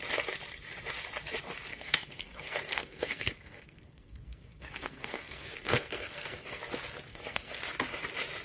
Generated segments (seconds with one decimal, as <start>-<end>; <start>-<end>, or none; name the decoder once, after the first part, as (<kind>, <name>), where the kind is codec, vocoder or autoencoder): 1.7-6.6 (codec, SNAC); 7.1-7.6